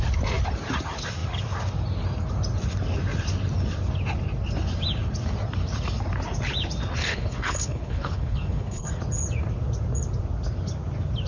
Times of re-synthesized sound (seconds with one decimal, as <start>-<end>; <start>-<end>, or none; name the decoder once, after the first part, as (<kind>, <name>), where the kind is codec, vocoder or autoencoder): 7.0-8.9 (codec, HILCodec)